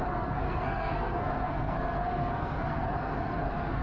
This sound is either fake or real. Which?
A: fake